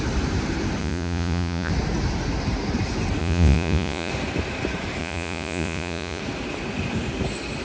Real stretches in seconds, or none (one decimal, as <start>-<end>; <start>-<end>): 0.0-0.8; 1.7-3.2; 4.1-5.0; 6.2-7.6